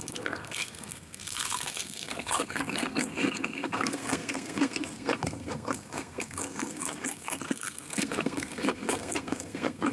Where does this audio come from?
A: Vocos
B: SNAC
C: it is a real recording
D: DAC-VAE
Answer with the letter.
B